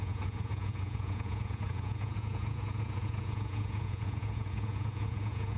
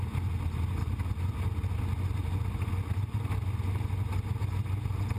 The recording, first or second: second